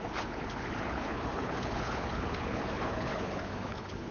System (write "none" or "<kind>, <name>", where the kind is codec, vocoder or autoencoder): codec, HILCodec